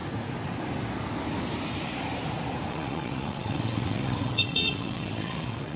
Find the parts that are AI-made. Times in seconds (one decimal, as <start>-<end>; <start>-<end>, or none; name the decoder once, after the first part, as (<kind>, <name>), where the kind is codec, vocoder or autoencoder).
2.7-5.8 (vocoder, WaveNeXt)